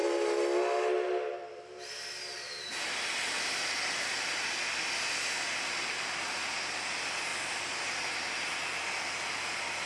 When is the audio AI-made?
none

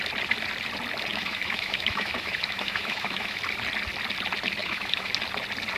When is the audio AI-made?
1.1-3.4 (autoencoder, DAC-VAE); 4.6-5.1